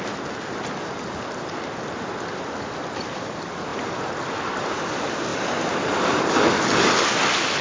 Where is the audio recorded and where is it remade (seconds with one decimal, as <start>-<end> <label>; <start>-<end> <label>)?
0.0-7.6 recorded